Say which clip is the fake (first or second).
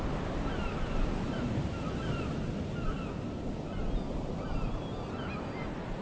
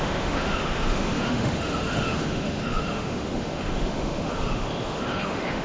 second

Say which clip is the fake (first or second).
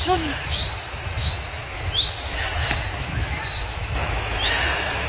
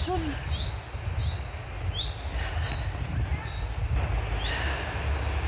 first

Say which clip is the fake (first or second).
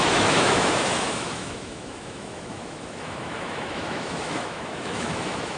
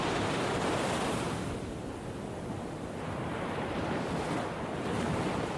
first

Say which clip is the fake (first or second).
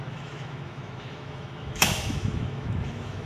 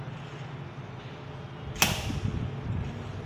first